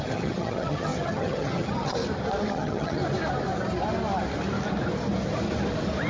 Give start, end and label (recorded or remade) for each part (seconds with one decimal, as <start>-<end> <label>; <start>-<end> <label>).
0.0-2.0 remade; 2.0-2.5 recorded; 2.5-3.0 remade; 3.0-6.1 recorded